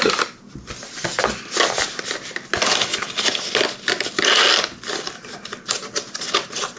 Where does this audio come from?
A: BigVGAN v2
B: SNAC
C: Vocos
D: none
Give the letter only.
D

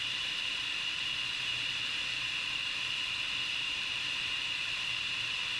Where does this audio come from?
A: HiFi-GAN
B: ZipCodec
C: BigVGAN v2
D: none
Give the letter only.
C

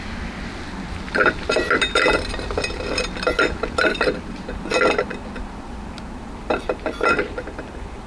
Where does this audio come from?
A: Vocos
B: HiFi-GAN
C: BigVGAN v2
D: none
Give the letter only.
D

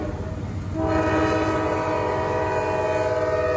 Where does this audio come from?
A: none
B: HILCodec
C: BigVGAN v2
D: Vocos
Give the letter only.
A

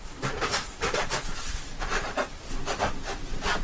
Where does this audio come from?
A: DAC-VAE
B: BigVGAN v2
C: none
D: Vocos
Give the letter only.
B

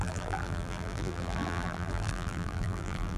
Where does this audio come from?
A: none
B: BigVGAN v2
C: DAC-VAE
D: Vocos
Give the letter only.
B